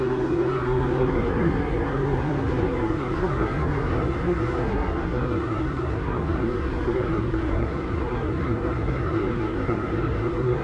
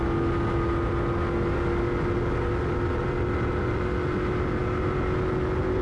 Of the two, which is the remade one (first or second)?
first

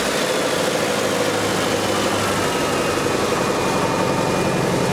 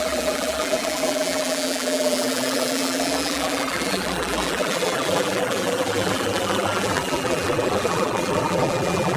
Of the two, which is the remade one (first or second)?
second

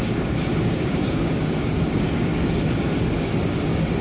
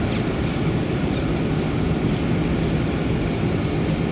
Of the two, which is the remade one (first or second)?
first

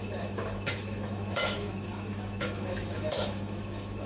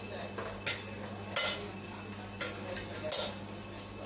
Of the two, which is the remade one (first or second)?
first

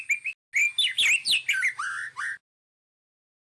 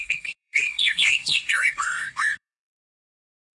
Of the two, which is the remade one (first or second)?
second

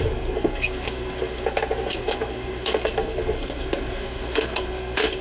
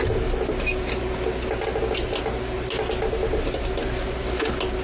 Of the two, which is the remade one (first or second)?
first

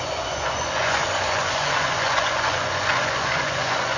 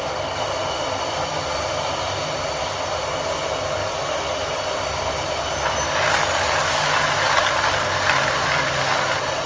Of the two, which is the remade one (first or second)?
first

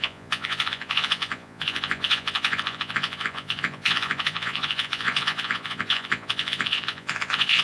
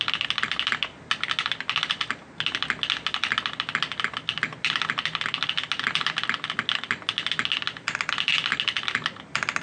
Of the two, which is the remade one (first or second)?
first